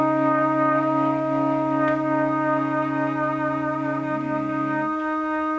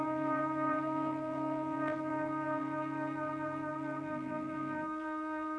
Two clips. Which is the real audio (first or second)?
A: first